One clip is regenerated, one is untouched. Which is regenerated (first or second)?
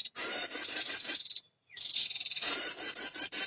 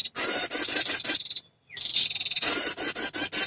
first